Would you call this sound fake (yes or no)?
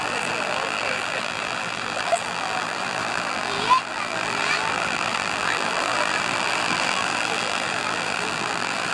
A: yes